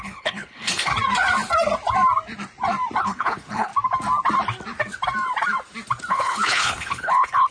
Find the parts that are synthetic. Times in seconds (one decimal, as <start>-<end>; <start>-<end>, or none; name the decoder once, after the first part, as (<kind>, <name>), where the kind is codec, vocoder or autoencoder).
0.0-0.9 (codec, HILCodec); 3.0-3.7; 6.1-7.5